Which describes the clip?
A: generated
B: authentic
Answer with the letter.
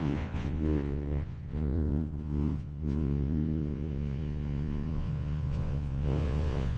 A